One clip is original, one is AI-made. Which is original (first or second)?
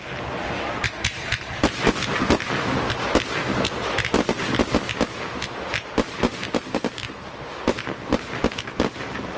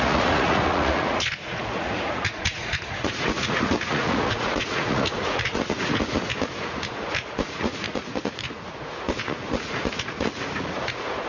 first